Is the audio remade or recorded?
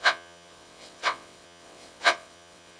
remade